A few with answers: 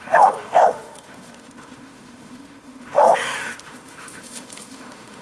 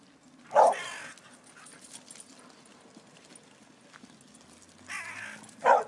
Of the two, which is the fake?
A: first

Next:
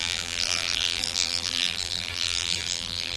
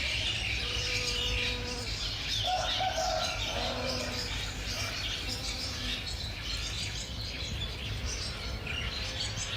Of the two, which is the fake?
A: first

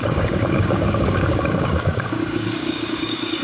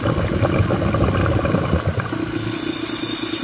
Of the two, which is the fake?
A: first